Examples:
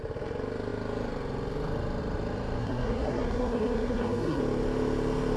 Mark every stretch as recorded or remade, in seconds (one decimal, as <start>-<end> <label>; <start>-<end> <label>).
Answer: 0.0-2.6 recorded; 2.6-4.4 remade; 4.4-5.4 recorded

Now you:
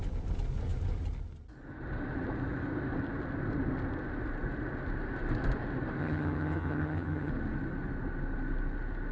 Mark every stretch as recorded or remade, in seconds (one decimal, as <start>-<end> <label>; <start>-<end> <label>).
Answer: 0.0-6.0 recorded; 6.0-7.3 remade; 7.3-9.1 recorded

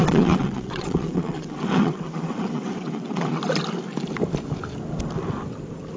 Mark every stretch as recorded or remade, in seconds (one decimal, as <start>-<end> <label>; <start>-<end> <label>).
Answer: 0.0-3.4 remade; 3.4-6.0 recorded

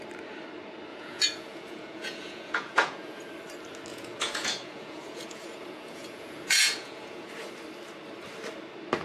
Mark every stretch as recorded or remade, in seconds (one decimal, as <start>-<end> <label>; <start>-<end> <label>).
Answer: 0.0-0.9 recorded; 0.9-3.2 remade; 3.2-3.9 recorded; 3.9-7.3 remade; 7.3-9.0 recorded